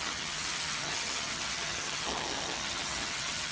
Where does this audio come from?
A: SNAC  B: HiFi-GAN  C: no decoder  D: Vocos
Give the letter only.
B